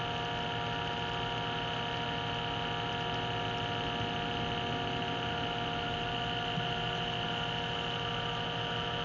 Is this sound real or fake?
real